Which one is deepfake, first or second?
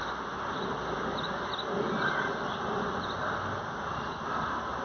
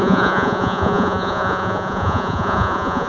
second